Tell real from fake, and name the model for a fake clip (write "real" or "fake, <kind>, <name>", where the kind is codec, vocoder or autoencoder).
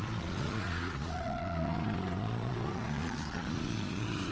fake, vocoder, Vocos